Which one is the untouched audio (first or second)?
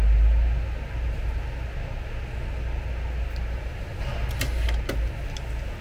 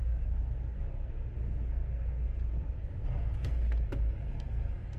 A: first